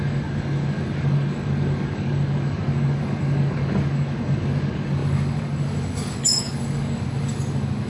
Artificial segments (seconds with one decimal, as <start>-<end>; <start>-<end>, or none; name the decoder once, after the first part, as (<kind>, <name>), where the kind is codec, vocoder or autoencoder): 0.0-7.9 (codec, DAC)